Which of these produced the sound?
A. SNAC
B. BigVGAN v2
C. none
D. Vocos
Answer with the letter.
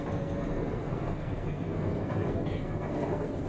A